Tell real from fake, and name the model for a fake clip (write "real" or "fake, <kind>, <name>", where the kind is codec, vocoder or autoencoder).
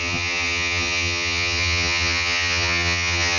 fake, vocoder, HiFi-GAN